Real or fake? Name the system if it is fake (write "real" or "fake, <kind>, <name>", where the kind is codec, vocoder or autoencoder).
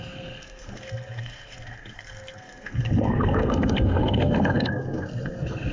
fake, codec, SNAC